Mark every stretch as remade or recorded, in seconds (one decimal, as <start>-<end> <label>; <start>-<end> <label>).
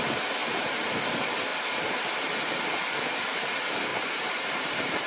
0.0-0.4 recorded; 0.4-0.9 remade; 0.9-3.9 recorded; 3.9-5.1 remade